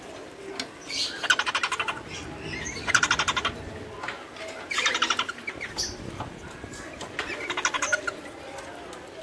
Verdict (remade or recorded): recorded